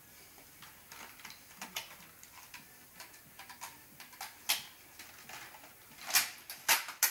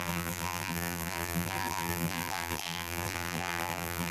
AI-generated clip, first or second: second